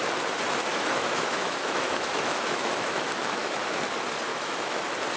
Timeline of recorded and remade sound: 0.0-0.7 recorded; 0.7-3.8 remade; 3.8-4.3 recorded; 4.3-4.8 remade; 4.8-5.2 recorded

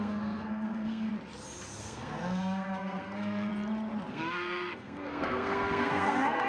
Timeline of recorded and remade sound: 0.0-1.1 remade; 1.1-1.8 recorded; 1.8-3.5 remade; 3.5-4.1 recorded; 4.1-6.5 remade

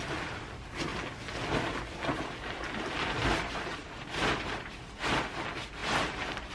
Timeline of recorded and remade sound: 0.0-3.2 recorded; 3.2-4.7 remade; 4.7-5.8 recorded; 5.8-6.5 remade

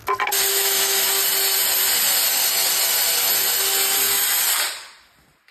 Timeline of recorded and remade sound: 0.0-0.5 recorded; 0.5-1.1 remade; 1.1-5.5 recorded

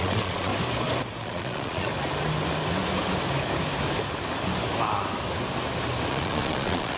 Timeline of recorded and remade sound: 0.0-0.5 remade; 0.5-1.2 recorded; 1.2-1.9 remade; 1.9-6.1 recorded; 6.1-7.0 remade

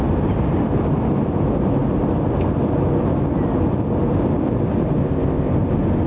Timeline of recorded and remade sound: 0.0-5.0 recorded; 5.0-5.5 remade; 5.5-6.1 recorded